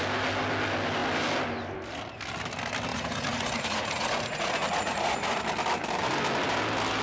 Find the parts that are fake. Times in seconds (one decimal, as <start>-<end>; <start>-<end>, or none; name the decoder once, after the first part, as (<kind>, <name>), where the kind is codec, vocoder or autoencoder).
2.9-5.4 (vocoder, Vocos)